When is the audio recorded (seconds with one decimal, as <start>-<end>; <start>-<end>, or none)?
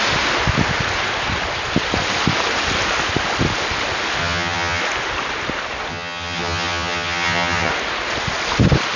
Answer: 0.0-4.2; 4.8-5.9; 7.7-9.0